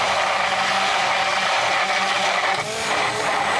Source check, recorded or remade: recorded